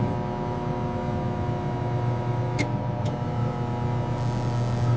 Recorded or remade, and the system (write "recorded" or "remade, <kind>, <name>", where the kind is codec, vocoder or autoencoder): recorded